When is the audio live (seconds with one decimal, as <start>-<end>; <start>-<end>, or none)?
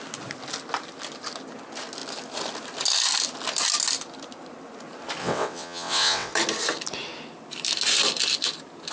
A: 0.0-5.2; 6.3-8.9